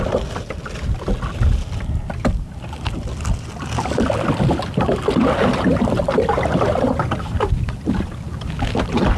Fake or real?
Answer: real